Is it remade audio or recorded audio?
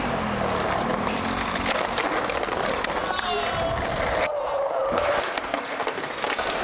recorded